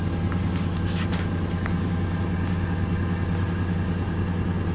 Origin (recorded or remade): recorded